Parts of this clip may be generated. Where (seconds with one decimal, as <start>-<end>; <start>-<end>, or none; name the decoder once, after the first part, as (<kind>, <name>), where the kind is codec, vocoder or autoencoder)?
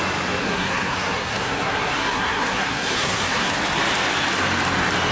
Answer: 0.4-3.5 (codec, SNAC)